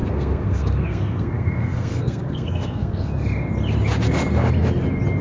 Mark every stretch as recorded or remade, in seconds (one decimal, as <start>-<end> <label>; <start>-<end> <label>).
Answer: 0.0-3.1 remade; 3.1-5.2 recorded